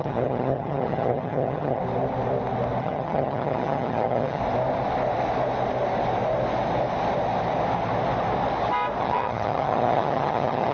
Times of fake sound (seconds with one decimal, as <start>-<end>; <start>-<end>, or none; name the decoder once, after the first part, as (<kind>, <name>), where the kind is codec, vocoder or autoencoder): 0.0-1.8 (vocoder, HiFi-GAN); 2.8-4.4; 9.0-10.7